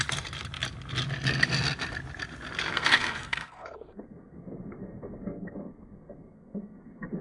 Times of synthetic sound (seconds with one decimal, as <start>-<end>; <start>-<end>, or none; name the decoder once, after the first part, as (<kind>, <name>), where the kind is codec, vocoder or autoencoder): 2.7-7.2 (codec, SNAC)